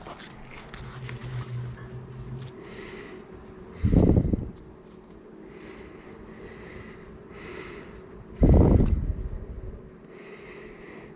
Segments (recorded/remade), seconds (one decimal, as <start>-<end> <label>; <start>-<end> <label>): 0.0-11.2 recorded